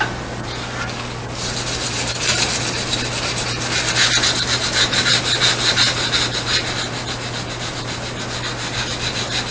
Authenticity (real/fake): real